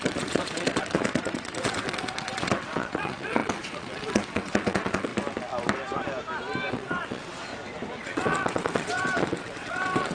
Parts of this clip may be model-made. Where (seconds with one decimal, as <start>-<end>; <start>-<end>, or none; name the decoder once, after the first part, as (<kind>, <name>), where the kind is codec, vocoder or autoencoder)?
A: 0.0-5.1 (vocoder, WaveNeXt); 6.7-7.5; 8.0-10.1

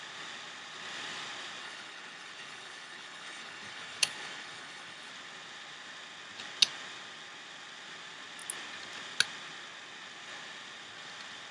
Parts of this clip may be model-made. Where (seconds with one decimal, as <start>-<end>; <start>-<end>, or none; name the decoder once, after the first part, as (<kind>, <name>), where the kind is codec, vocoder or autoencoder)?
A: 1.6-5.1 (codec, HILCodec)

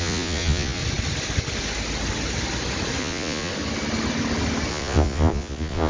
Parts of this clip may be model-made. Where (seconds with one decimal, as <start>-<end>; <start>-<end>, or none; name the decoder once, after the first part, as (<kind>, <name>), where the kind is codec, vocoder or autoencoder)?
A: 0.0-0.8 (vocoder, Vocos); 3.0-3.5; 4.7-5.9